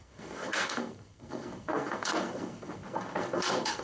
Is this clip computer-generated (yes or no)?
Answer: yes